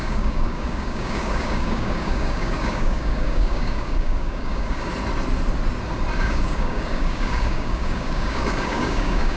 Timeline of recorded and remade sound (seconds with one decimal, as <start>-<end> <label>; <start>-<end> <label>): 0.0-4.9 remade; 4.9-6.2 recorded; 6.2-9.4 remade